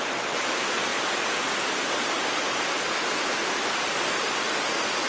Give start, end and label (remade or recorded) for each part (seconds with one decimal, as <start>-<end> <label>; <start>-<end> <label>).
0.0-5.1 recorded